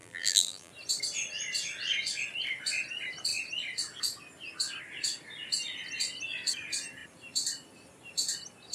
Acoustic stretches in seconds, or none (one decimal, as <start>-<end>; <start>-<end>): 0.7-8.7